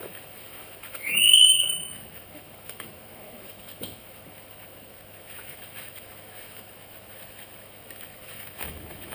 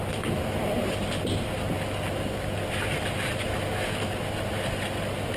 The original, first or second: second